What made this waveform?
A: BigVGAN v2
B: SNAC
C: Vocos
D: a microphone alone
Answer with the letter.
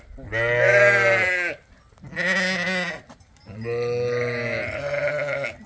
D